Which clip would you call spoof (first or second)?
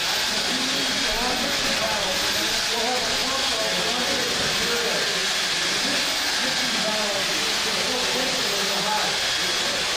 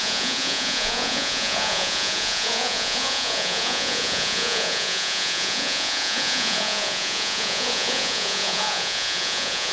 second